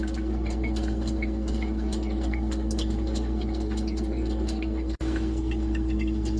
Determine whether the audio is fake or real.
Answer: fake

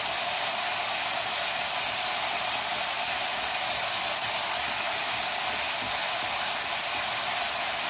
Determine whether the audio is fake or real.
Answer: real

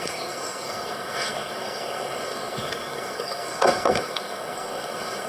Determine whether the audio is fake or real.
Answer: fake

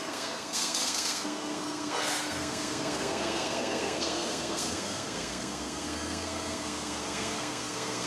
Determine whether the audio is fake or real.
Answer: fake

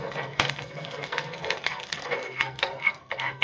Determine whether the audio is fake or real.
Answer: fake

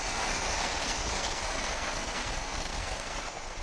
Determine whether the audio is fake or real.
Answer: fake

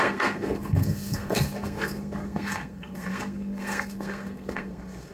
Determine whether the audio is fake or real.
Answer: fake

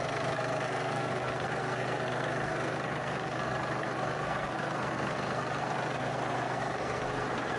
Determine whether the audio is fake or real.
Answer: fake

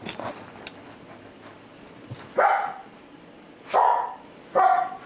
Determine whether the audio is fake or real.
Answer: real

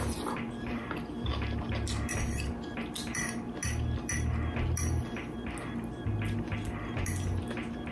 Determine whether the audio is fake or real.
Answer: real